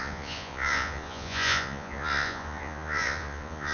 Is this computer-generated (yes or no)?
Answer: yes